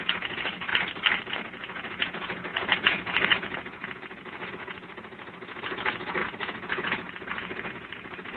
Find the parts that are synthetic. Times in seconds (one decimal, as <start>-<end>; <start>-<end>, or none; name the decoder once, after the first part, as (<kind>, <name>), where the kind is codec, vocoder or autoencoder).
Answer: 0.0-0.7 (vocoder, Vocos); 1.3-8.4